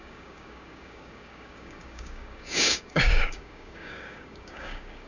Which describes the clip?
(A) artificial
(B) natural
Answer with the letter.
A